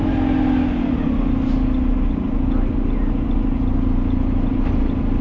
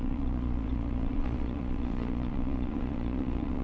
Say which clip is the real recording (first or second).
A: first